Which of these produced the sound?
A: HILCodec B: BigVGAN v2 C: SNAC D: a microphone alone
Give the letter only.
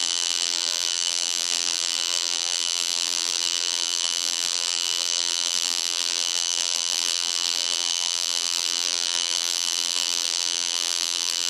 B